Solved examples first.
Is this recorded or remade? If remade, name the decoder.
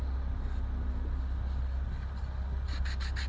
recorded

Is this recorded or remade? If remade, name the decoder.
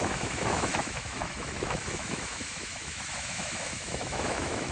remade, autoencoder, DAC-VAE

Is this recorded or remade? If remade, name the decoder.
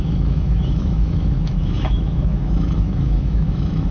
remade, autoencoder, DAC-VAE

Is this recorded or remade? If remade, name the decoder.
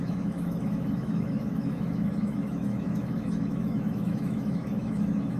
remade, autoencoder, DAC-VAE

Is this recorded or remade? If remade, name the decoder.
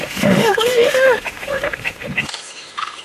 remade, autoencoder, DAC-VAE